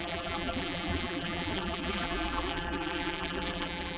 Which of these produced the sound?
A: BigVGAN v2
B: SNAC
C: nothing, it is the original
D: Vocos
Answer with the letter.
A